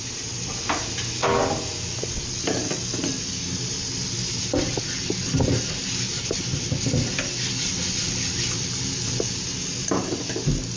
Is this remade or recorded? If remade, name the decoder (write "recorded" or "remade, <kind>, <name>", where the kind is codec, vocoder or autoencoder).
recorded